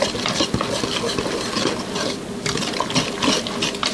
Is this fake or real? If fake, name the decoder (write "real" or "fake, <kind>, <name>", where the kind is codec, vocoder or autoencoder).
real